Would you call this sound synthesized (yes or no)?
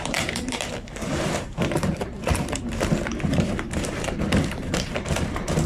yes